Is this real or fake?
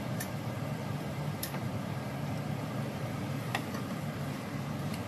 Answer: fake